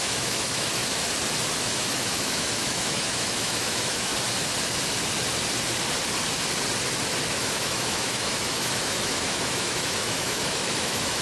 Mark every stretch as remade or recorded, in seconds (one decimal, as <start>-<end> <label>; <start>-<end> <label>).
0.0-0.8 remade; 0.8-1.6 recorded; 1.6-4.1 remade; 4.1-7.3 recorded; 7.3-11.2 remade